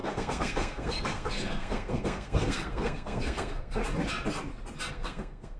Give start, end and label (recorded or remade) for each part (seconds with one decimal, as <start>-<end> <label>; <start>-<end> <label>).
0.0-3.8 remade; 3.8-4.9 recorded; 4.9-5.6 remade